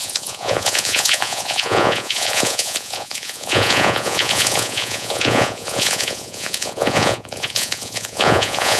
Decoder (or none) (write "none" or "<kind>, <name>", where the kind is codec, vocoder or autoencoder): vocoder, Vocos